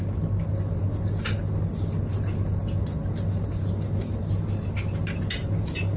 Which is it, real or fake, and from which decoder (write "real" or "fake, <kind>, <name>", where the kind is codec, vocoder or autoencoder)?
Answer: real